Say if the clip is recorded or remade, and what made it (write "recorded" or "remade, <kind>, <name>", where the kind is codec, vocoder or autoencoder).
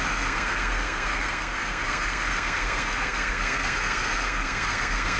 remade, codec, SNAC